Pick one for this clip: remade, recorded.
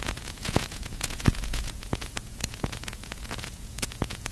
remade